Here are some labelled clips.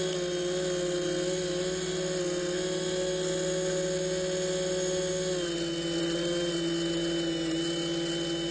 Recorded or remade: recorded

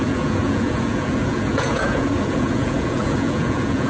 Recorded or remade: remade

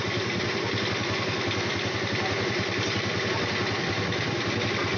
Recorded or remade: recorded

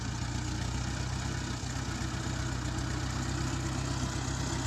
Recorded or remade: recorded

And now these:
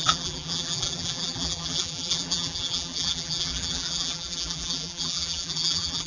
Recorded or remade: remade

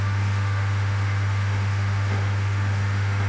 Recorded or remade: remade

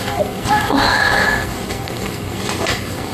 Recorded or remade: remade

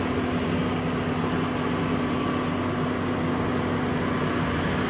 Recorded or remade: recorded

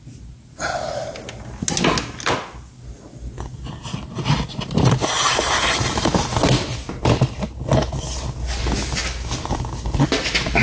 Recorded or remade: recorded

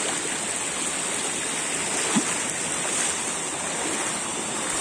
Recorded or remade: recorded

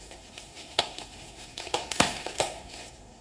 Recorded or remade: remade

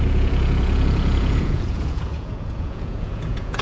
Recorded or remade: remade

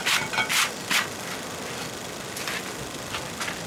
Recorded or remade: recorded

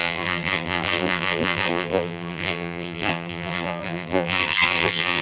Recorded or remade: remade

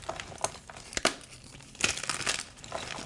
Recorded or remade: remade